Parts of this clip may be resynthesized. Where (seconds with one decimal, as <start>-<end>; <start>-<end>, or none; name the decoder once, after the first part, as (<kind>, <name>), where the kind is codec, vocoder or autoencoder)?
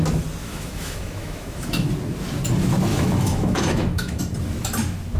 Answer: 0.4-1.9 (autoencoder, DAC-VAE); 2.9-4.2